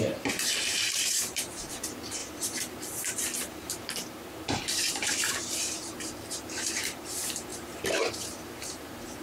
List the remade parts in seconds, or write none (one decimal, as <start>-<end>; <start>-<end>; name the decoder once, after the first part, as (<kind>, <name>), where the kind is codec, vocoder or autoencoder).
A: 0.0-9.2 (vocoder, BigVGAN v2)